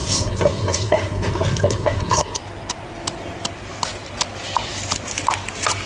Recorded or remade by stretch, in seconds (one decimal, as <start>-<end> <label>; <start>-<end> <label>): 0.0-2.4 remade; 2.4-5.9 recorded